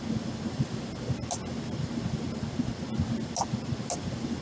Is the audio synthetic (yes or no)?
no